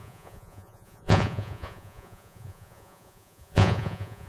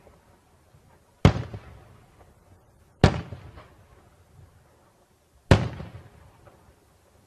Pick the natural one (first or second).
second